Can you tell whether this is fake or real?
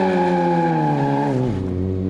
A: real